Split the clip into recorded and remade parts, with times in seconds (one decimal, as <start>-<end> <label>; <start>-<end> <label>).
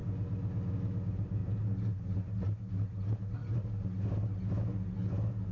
0.0-1.4 recorded; 1.4-2.0 remade; 2.0-5.5 recorded